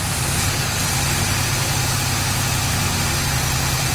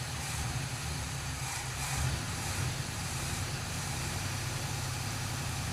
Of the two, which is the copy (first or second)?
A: second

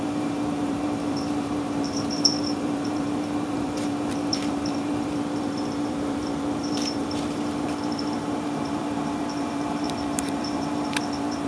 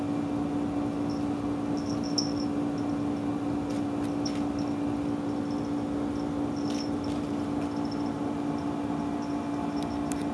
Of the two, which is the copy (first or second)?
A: first